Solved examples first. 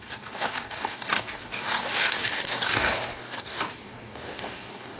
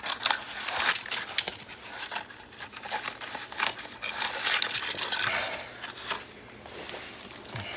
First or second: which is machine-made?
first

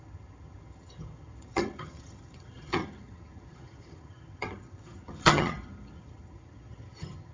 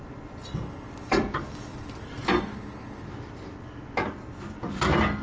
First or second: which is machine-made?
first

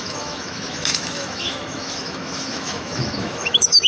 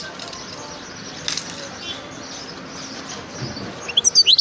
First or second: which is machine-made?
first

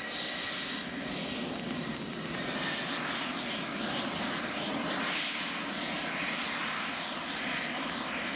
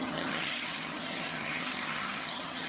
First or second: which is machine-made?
second